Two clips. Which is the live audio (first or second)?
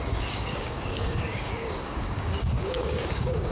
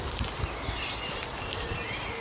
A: second